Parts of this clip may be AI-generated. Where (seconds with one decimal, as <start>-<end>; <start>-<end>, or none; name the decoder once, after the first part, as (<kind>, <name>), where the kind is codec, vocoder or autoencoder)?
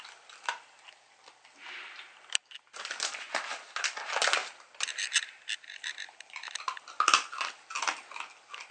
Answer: none